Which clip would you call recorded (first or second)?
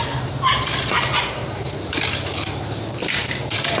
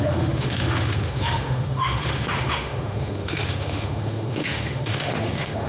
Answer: first